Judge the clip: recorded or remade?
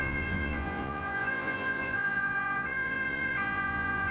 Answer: remade